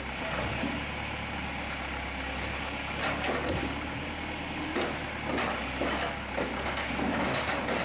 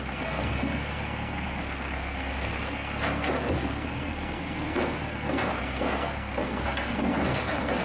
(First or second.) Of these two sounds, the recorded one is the first